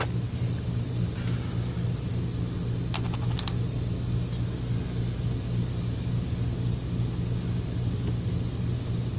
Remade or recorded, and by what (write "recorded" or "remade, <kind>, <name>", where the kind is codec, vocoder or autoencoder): recorded